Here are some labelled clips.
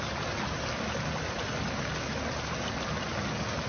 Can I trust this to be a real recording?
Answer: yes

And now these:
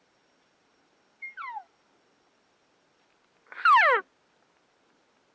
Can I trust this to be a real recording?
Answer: yes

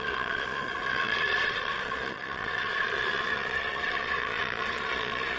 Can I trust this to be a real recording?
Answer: no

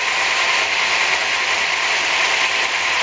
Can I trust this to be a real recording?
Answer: yes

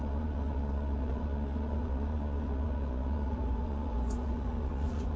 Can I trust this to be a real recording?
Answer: no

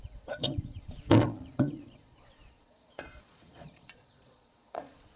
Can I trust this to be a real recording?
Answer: no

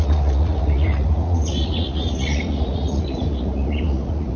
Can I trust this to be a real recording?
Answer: no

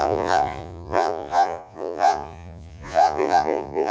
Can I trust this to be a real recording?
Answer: no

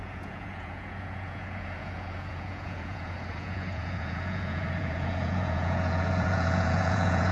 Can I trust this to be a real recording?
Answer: no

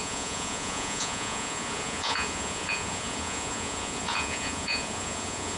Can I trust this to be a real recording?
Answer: no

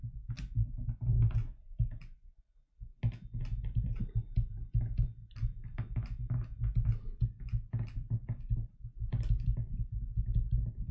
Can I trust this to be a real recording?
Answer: yes